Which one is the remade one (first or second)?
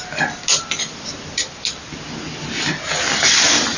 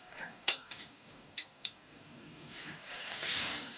second